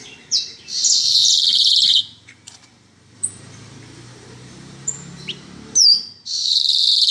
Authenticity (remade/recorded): remade